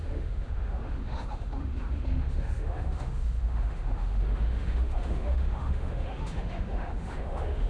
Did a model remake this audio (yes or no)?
yes